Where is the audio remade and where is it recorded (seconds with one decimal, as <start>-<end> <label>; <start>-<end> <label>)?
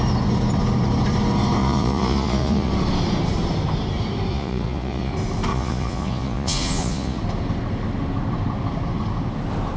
0.0-1.6 recorded; 1.6-2.7 remade; 2.7-4.3 recorded; 4.3-5.1 remade; 5.1-5.5 recorded; 5.5-7.2 remade; 7.2-9.8 recorded